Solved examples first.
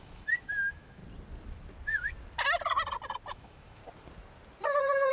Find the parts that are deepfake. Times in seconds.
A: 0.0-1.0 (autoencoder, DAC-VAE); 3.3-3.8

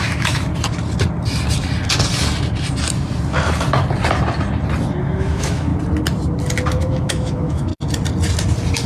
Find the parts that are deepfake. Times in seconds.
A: 0.0-0.5 (autoencoder, DAC-VAE); 5.0-5.7; 6.8-7.7

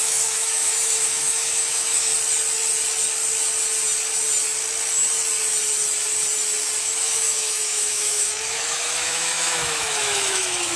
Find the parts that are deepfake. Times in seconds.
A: 0.0-2.1 (autoencoder, DAC-VAE); 6.8-10.8